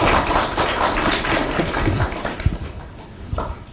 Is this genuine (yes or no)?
yes